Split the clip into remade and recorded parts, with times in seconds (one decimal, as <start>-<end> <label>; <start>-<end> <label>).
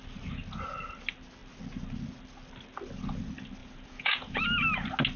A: 0.0-3.6 recorded; 3.6-4.4 remade; 4.4-5.2 recorded